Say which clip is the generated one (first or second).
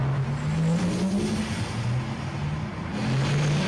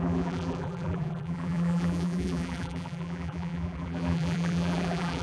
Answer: second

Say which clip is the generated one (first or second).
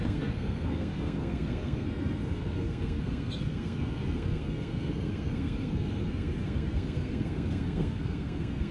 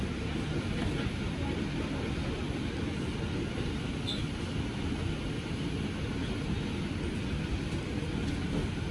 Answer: first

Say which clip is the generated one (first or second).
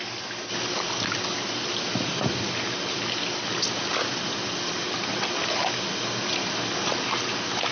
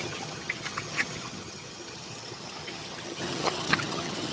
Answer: second